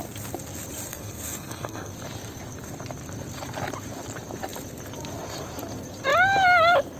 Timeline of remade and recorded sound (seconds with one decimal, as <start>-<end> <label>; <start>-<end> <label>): 0.0-0.9 recorded; 0.9-1.9 remade; 1.9-7.0 recorded